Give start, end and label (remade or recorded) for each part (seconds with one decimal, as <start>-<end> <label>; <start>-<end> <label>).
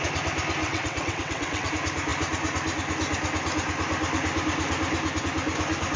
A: 0.0-0.6 recorded; 0.6-1.7 remade; 1.7-6.0 recorded